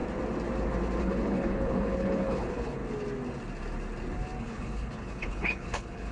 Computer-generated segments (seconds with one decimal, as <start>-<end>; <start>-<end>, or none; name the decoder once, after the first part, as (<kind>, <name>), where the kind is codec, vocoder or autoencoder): 1.0-2.8 (codec, HILCodec); 4.4-6.1